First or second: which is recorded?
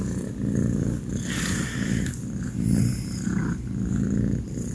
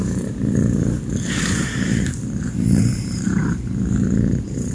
first